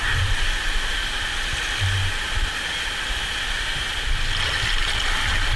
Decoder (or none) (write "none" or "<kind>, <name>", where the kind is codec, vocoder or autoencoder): none